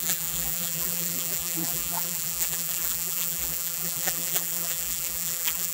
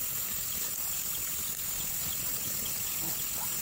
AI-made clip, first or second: first